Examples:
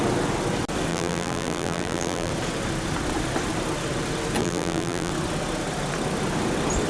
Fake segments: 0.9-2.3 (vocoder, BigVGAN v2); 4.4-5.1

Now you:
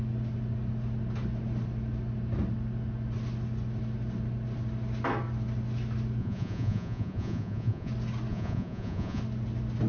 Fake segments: 6.2-7.9 (vocoder, Vocos); 8.3-9.2

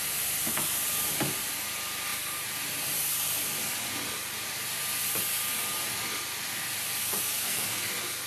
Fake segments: 7.0-7.9 (codec, SNAC)

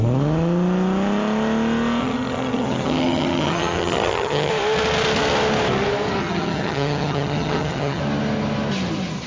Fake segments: 2.0-4.5 (vocoder, HiFi-GAN); 6.2-8.0

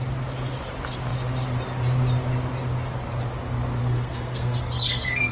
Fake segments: 3.8-5.3 (codec, SNAC)

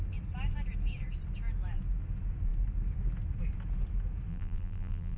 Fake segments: 4.3-5.2 (vocoder, BigVGAN v2)

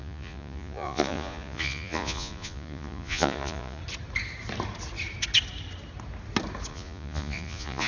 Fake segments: 0.0-3.8 (vocoder, Vocos); 6.7-7.9